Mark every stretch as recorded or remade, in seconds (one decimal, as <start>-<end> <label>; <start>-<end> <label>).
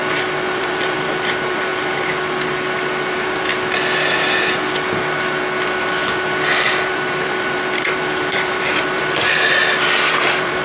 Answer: 0.0-0.6 recorded; 0.6-1.7 remade; 1.7-6.7 recorded; 6.7-10.6 remade